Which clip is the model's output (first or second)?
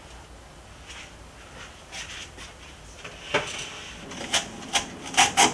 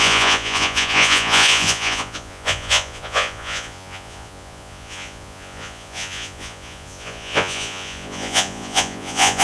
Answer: second